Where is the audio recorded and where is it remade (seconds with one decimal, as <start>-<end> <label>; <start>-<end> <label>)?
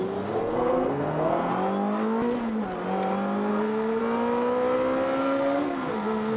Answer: 0.0-0.4 recorded; 0.4-1.5 remade; 1.5-3.5 recorded; 3.5-4.0 remade; 4.0-5.2 recorded; 5.2-6.4 remade